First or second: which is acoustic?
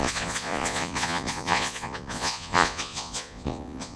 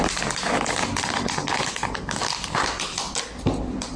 second